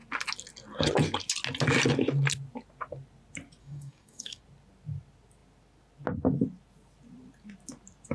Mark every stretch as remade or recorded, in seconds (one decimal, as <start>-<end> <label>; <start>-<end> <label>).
0.0-3.6 recorded; 3.6-4.4 remade; 4.4-8.1 recorded